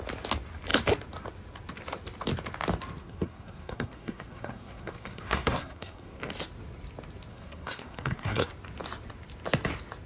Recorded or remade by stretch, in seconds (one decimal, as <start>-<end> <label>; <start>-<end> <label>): 0.0-3.0 recorded; 3.0-6.2 remade; 6.2-7.3 recorded; 7.3-8.5 remade; 8.5-10.1 recorded